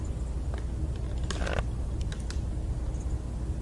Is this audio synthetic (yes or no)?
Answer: no